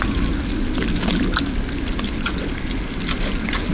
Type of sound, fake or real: real